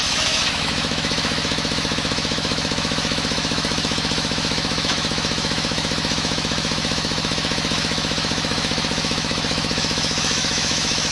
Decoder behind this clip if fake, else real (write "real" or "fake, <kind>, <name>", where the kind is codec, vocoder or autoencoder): fake, autoencoder, DAC-VAE